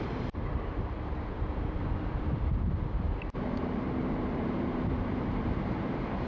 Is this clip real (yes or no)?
no